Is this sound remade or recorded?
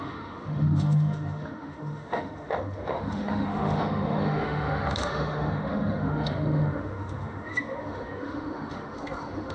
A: remade